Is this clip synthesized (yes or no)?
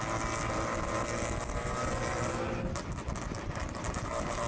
no